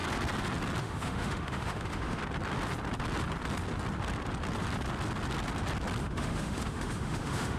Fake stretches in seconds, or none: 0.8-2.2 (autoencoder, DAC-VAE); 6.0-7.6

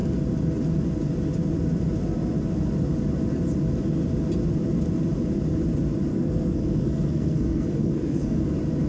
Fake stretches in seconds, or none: 6.1-8.4 (codec, SNAC)

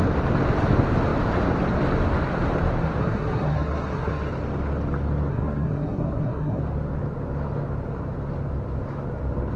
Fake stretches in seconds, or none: 3.0-4.3 (codec, SNAC); 5.3-6.6

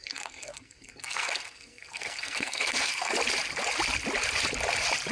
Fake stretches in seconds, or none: 0.0-3.1 (codec, SNAC)

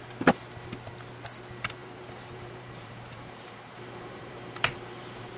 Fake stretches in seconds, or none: 1.8-5.0 (vocoder, BigVGAN v2)

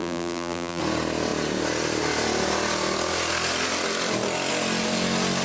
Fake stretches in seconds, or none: 0.0-0.8 (vocoder, BigVGAN v2)

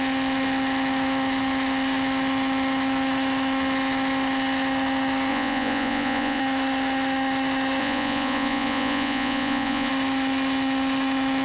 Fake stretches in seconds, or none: 5.3-6.4 (vocoder, Vocos); 7.8-9.9

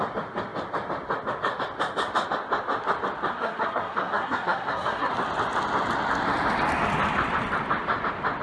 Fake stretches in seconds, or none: 3.3-5.1 (codec, SNAC)